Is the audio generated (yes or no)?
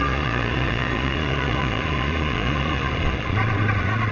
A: yes